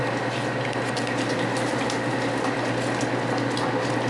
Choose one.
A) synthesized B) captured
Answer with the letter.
B